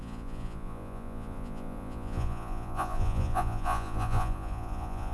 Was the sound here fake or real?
fake